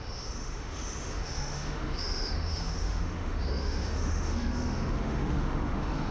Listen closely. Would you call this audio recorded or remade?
remade